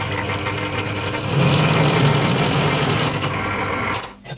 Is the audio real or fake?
real